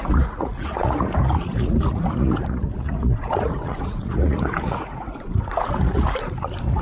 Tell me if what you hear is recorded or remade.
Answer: remade